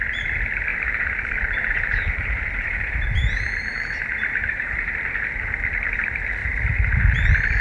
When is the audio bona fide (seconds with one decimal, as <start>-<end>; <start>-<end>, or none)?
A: 0.0-0.7; 4.9-6.4